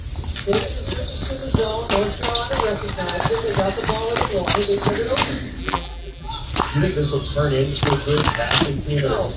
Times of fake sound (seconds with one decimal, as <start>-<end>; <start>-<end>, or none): 5.6-6.3